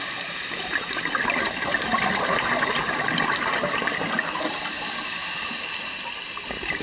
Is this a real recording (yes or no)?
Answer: no